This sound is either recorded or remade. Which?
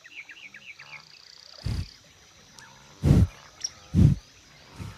remade